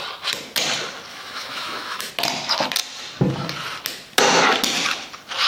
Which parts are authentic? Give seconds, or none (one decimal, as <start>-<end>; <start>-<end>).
0.0-1.1; 2.1-5.5